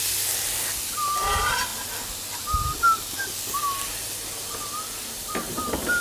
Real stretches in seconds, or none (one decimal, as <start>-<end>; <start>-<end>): 0.0-6.0